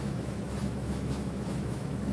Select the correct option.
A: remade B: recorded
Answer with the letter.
A